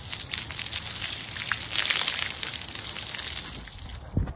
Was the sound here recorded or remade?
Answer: recorded